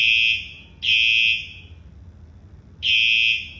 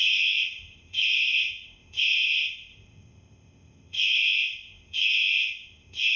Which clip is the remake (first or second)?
second